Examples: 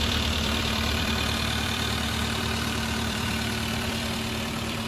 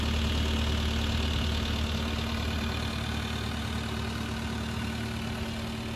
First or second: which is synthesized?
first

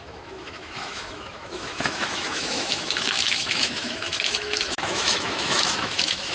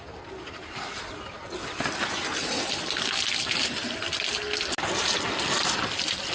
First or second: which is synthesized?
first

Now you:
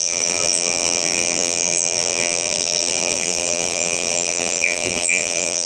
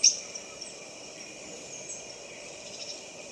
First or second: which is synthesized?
first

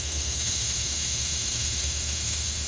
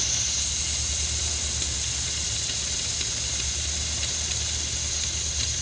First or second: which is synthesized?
first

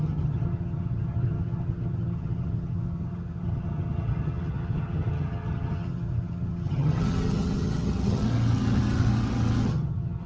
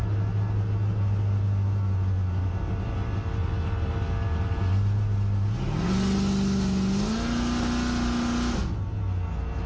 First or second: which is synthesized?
first